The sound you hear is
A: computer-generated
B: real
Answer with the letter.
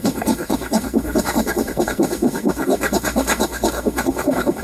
A